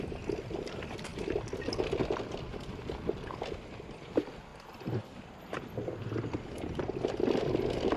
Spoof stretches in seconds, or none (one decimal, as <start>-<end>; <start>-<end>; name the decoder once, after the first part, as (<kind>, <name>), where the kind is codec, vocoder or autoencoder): none